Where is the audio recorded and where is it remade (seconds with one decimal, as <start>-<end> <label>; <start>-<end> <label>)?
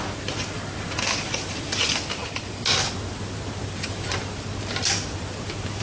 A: 0.0-5.8 recorded